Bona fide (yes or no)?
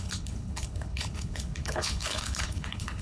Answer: no